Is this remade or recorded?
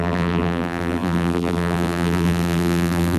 remade